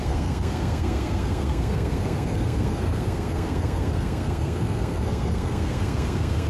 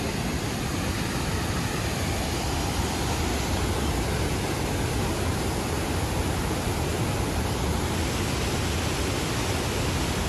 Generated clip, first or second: first